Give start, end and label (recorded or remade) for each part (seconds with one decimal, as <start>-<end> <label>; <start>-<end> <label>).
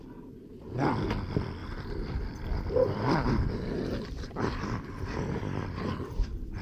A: 0.0-1.6 recorded; 1.6-5.6 remade; 5.6-6.6 recorded